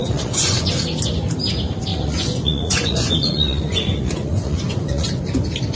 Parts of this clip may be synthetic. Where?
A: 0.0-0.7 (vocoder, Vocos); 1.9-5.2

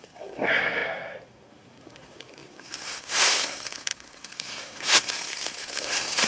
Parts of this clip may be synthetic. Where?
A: 0.0-6.3 (codec, SNAC)

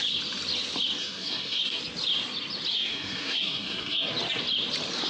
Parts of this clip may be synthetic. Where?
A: 1.0-1.8 (codec, SNAC); 2.7-4.1

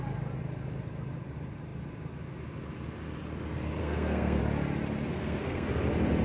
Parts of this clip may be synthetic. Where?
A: 3.8-4.4 (codec, SNAC); 5.1-5.7

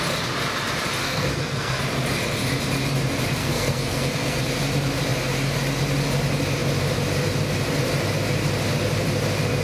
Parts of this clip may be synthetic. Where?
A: 1.0-1.8 (codec, SNAC); 3.4-4.4

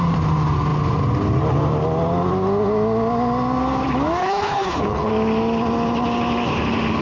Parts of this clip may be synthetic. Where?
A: 4.2-5.1 (codec, HILCodec)